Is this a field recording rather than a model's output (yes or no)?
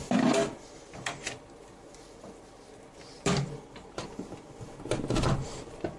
yes